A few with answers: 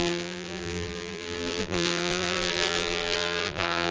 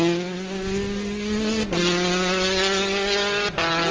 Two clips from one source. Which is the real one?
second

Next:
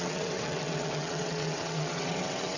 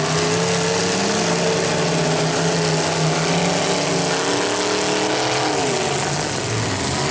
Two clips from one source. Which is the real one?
second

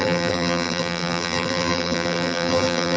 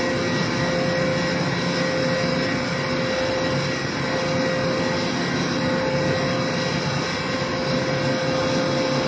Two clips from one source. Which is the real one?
second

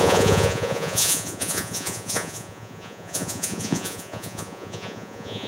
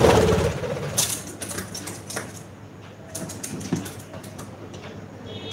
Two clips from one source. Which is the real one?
second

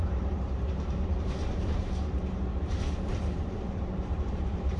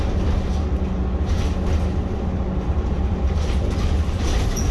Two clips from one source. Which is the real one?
second